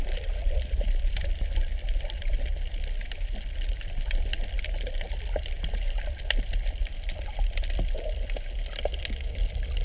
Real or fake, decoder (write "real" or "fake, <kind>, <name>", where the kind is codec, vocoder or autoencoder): fake, vocoder, BigVGAN v2